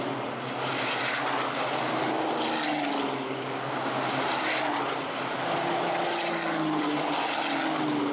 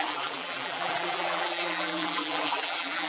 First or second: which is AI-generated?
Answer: second